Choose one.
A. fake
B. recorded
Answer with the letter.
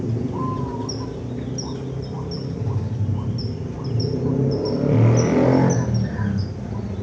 B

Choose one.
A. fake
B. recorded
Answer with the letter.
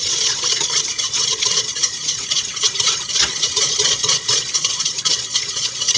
A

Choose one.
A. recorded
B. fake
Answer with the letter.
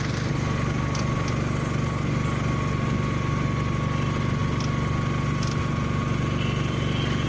A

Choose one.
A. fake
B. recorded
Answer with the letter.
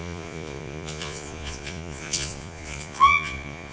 A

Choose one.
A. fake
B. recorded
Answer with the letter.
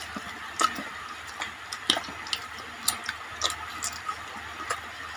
B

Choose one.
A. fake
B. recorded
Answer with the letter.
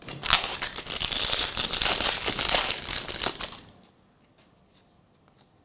B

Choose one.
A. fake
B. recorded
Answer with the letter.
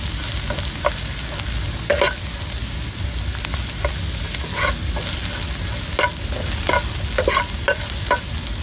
B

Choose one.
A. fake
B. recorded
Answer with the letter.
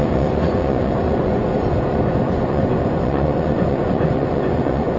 A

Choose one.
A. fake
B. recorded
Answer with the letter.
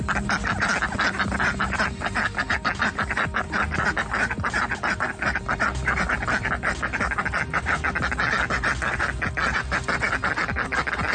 B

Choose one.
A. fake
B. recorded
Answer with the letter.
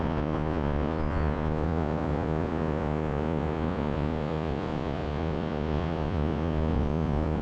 A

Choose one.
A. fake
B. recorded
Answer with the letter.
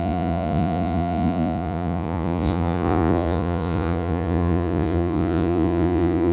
A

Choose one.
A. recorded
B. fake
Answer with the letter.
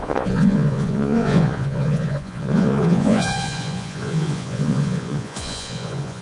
B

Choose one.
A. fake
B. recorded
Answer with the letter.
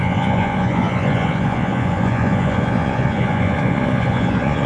A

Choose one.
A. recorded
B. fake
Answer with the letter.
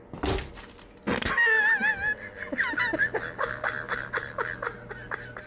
A